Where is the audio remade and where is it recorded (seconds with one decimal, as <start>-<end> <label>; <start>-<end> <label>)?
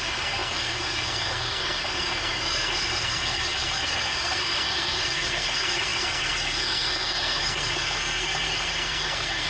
0.0-9.5 remade